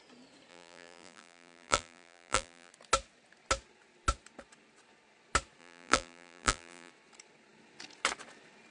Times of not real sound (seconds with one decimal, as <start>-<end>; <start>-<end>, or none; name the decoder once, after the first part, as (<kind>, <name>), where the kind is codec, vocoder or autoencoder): 0.5-2.7 (vocoder, BigVGAN v2); 5.6-6.9